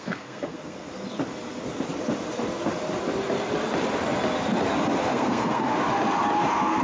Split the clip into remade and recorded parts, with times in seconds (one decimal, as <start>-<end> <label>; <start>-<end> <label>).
0.0-0.9 remade; 0.9-5.0 recorded; 5.0-5.7 remade; 5.7-6.8 recorded